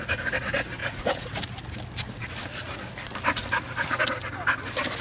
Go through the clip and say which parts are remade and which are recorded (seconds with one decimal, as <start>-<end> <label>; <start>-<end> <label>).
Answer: 0.0-0.8 recorded; 0.8-1.4 remade; 1.4-5.0 recorded